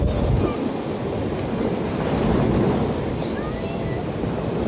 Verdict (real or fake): real